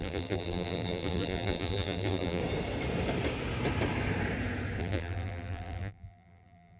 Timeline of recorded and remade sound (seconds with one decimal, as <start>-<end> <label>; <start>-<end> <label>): 0.0-2.4 remade; 2.4-4.8 recorded; 4.8-6.8 remade